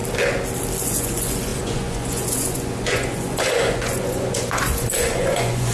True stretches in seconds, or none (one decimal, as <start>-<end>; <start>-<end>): 0.0-0.8